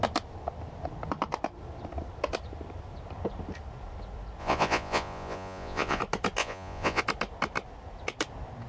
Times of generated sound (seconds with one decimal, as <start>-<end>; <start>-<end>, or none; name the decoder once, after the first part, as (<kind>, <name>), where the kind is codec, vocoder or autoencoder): 4.4-6.0 (vocoder, Vocos); 6.4-7.0

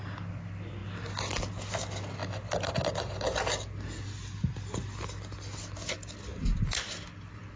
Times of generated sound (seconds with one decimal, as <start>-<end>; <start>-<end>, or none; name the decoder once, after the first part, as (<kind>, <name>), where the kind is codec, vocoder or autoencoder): none

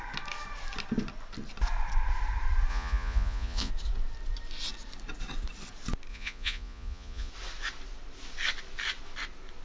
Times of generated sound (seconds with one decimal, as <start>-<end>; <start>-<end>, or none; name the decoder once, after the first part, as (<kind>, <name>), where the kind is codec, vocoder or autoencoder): 2.7-3.7 (vocoder, Vocos); 6.1-7.3

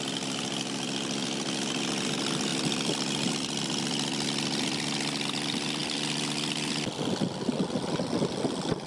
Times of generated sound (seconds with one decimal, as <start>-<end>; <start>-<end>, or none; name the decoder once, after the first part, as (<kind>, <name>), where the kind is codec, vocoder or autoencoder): none

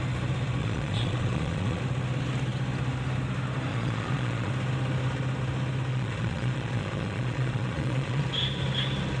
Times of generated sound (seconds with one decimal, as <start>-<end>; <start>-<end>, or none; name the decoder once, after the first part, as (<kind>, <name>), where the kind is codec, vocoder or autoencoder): 0.6-1.8 (vocoder, Vocos); 3.7-4.5; 5.9-8.2

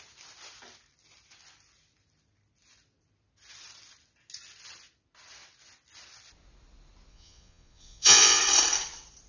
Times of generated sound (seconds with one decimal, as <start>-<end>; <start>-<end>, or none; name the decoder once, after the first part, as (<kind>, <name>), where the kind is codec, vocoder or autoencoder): 7.1-8.4 (vocoder, Vocos)